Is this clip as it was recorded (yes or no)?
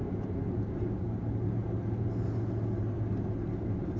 yes